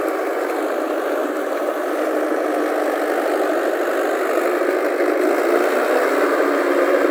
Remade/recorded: recorded